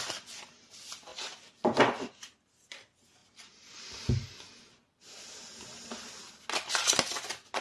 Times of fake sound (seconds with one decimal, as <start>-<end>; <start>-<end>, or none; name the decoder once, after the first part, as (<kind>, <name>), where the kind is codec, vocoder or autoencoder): 0.0-3.2 (vocoder, BigVGAN v2)